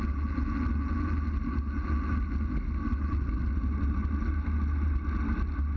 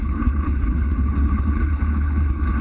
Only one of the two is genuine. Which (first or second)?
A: first